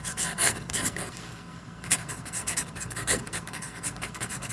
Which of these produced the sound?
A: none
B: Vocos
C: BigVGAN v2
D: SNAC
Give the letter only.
D